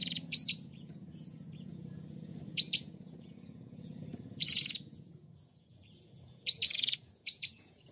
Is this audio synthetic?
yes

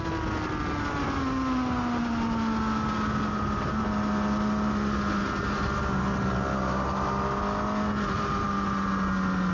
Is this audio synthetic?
no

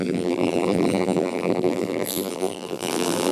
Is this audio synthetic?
yes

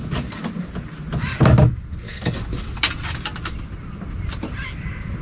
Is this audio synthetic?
no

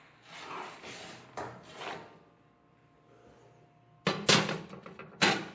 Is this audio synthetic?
no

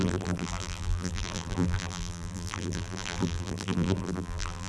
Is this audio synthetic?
yes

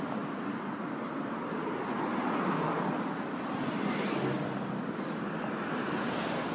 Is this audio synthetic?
no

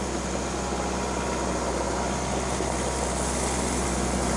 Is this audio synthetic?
no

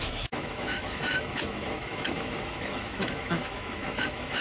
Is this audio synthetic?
yes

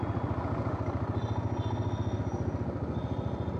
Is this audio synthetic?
no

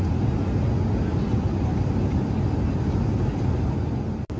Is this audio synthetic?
no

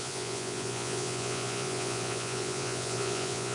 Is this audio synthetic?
yes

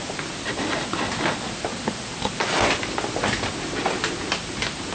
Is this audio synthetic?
no